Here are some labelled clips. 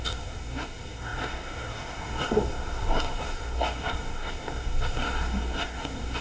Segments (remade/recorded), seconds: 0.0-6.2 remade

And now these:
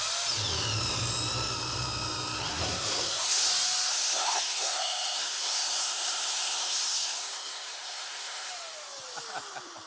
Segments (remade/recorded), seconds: 0.0-2.5 recorded; 2.5-3.5 remade; 3.5-3.9 recorded; 3.9-8.5 remade; 8.5-9.9 recorded

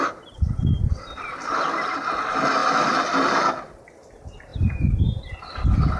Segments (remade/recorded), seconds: 0.0-6.0 recorded

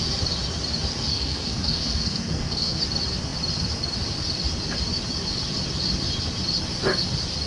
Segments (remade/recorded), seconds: 0.0-1.1 recorded; 1.1-2.8 remade; 2.8-7.5 recorded